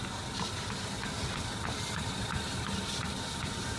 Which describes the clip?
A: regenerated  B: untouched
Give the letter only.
B